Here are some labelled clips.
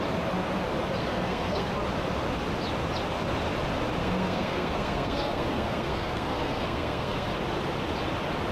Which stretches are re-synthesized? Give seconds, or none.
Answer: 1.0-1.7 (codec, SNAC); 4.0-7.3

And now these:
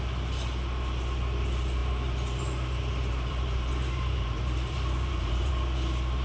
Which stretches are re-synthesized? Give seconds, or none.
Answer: 1.8-5.5 (vocoder, BigVGAN v2)